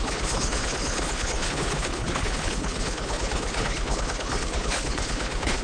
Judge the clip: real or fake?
fake